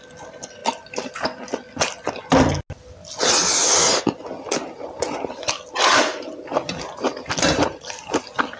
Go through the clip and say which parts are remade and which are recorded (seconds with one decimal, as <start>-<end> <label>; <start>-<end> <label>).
0.0-8.6 recorded